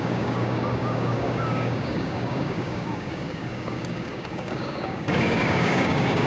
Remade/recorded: remade